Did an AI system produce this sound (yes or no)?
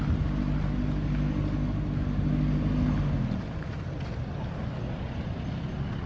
no